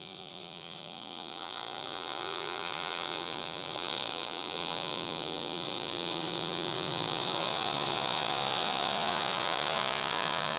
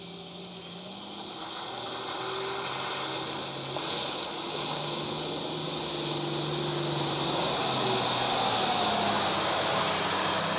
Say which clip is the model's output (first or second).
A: first